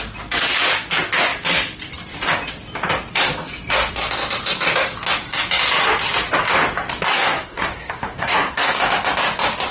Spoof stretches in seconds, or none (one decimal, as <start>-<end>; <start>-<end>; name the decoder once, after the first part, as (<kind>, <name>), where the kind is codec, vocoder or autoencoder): 7.1-8.8 (codec, SNAC)